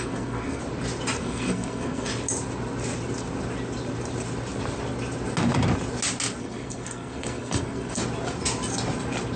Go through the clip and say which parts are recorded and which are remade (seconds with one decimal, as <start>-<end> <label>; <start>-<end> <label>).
0.0-0.6 remade; 0.6-1.2 recorded; 1.2-2.1 remade; 2.1-6.4 recorded; 6.4-8.0 remade; 8.0-9.4 recorded

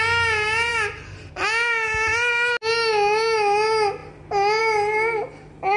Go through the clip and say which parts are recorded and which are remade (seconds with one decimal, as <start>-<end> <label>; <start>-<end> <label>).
0.0-5.8 recorded

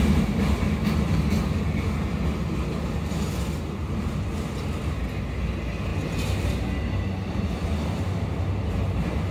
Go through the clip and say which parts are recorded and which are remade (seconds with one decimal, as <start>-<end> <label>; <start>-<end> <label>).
0.0-9.3 recorded

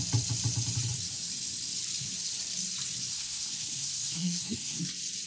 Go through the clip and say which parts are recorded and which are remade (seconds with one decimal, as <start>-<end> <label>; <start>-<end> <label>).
0.0-3.1 recorded; 3.1-4.8 remade; 4.8-5.3 recorded

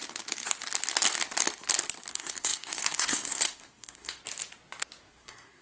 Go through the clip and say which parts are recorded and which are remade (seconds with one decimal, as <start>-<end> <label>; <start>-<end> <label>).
0.0-2.1 recorded; 2.1-4.2 remade; 4.2-5.1 recorded; 5.1-5.6 remade

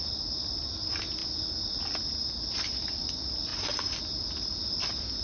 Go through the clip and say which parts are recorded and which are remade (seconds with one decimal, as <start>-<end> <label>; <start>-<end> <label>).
0.0-5.2 recorded